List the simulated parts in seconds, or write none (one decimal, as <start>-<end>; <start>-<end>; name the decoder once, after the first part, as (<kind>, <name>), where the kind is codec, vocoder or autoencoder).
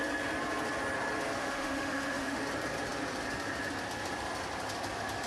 1.4-2.4 (autoencoder, DAC-VAE)